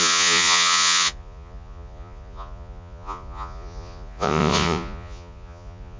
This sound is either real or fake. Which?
fake